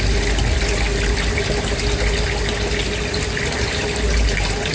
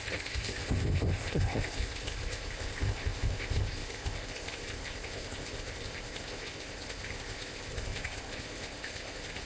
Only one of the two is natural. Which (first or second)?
first